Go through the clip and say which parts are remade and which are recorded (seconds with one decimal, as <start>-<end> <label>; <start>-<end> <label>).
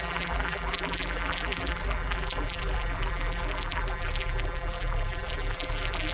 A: 0.0-6.1 remade